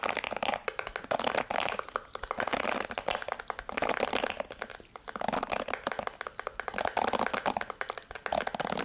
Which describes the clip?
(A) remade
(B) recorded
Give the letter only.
B